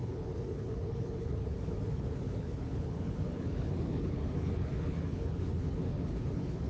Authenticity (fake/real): fake